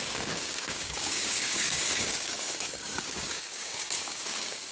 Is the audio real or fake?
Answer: fake